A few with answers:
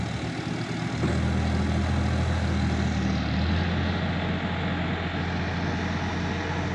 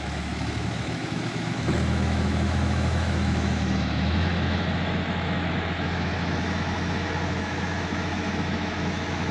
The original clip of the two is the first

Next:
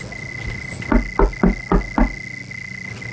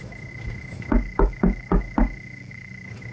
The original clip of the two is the first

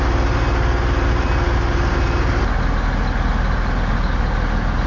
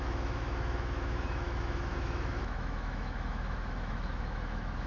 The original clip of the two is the first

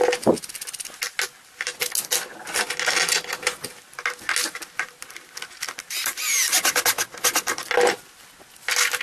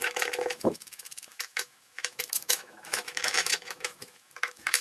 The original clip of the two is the first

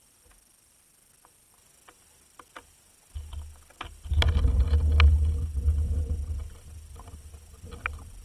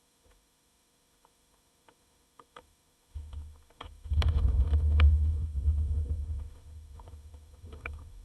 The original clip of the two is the first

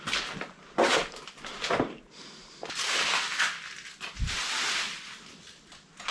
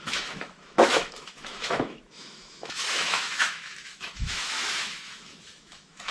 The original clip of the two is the first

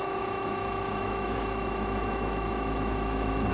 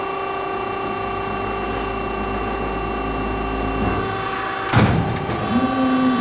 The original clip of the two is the second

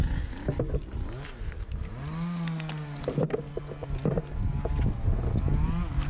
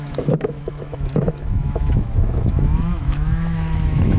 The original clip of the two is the first